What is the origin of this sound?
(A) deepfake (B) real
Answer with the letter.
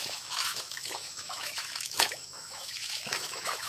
A